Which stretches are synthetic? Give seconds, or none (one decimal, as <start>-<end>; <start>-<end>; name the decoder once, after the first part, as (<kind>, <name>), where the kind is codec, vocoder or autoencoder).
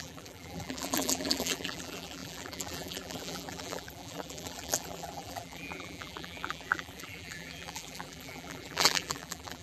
0.0-9.6 (vocoder, BigVGAN v2)